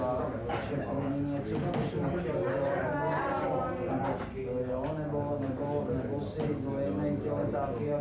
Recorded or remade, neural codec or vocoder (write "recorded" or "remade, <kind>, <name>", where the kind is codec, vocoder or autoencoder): recorded